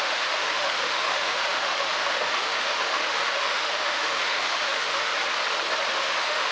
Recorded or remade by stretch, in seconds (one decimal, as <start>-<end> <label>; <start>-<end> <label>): 0.0-5.1 remade; 5.1-5.9 recorded; 5.9-6.5 remade